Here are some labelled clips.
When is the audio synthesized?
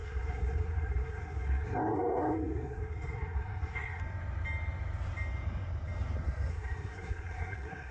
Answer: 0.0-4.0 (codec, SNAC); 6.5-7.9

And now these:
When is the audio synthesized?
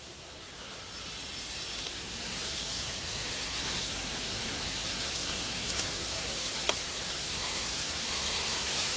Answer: 0.0-0.8 (codec, SNAC); 1.8-9.0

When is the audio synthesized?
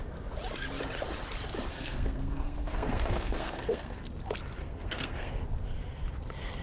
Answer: 1.7-4.0 (codec, SNAC); 4.6-5.3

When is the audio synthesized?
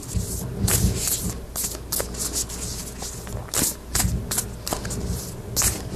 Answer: none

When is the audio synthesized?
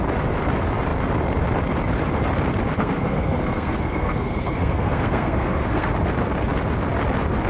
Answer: 2.8-5.9 (codec, SNAC)